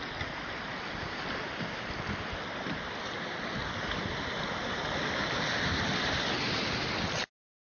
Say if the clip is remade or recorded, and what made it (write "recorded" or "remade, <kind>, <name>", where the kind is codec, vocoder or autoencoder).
recorded